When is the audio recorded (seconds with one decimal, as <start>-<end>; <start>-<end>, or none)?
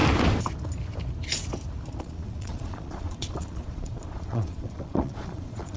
0.0-2.0